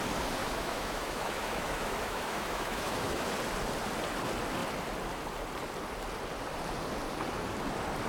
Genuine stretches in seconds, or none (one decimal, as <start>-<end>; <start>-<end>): 0.0-0.4; 3.3-8.1